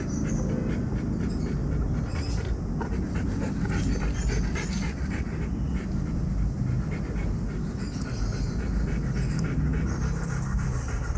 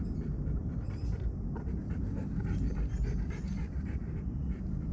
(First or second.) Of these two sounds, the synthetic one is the second